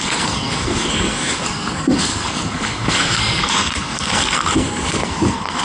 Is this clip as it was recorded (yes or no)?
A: no